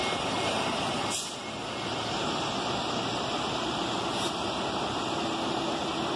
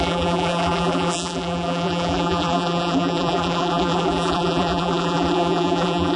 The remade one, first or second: second